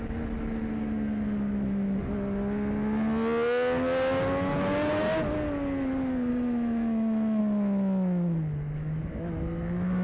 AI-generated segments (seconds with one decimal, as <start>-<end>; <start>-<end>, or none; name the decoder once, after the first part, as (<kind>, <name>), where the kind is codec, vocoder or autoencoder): 6.3-7.4 (autoencoder, DAC-VAE)